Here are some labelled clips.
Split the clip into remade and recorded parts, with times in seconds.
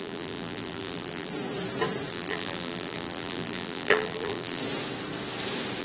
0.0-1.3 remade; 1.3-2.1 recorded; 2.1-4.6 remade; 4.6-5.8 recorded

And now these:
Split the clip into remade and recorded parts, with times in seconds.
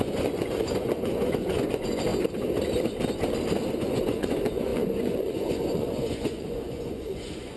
0.0-2.1 remade; 2.1-3.7 recorded; 3.7-7.6 remade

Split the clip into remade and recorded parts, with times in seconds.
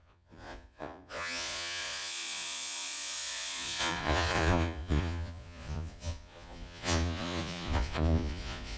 0.0-8.8 remade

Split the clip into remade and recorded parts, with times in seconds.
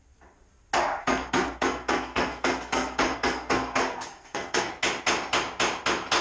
0.0-1.0 recorded; 1.0-4.7 remade; 4.7-6.2 recorded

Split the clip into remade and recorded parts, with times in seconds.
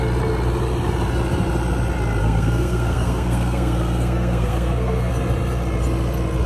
0.0-2.2 recorded; 2.2-5.1 remade; 5.1-6.5 recorded